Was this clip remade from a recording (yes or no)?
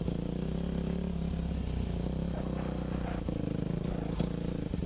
no